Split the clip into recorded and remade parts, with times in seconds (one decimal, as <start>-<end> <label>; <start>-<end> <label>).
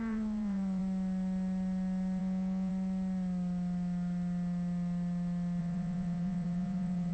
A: 0.0-0.8 remade; 0.8-2.2 recorded; 2.2-2.7 remade; 2.7-5.6 recorded; 5.6-7.1 remade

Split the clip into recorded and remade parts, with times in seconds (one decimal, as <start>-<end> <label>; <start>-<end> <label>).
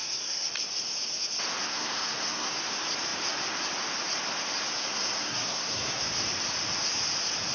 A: 0.0-0.5 remade; 0.5-1.6 recorded; 1.6-2.5 remade; 2.5-4.8 recorded; 4.8-6.0 remade; 6.0-7.5 recorded